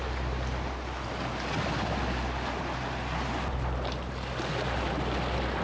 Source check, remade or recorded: recorded